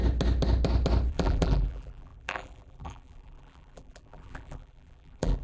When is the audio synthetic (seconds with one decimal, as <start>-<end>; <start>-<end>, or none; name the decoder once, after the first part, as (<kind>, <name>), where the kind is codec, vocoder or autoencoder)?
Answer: 1.1-5.4 (vocoder, BigVGAN v2)